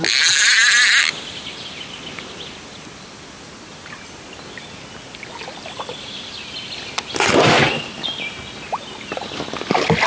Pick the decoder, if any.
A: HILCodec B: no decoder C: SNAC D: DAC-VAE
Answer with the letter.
B